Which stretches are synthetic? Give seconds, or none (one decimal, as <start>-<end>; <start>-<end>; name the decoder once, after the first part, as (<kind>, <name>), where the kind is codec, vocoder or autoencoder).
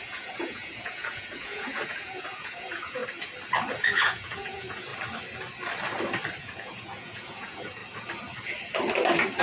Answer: 0.0-3.0 (vocoder, Vocos); 3.8-4.9; 6.4-7.8